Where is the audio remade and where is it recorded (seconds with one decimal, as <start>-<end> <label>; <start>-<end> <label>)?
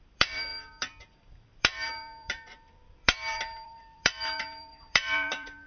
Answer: 0.0-5.7 remade